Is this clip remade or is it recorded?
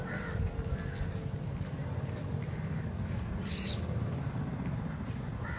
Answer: recorded